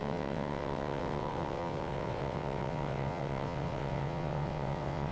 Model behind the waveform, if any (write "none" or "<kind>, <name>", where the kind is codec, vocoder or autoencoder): vocoder, WaveNeXt